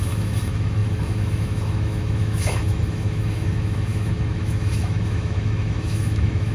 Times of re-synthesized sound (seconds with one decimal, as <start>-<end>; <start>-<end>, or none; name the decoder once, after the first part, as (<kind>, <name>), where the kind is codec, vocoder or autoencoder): 0.0-6.5 (autoencoder, DAC-VAE)